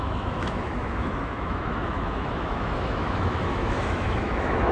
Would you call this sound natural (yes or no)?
no